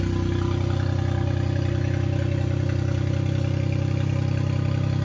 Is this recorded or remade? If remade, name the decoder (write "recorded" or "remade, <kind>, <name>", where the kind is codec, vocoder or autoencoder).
recorded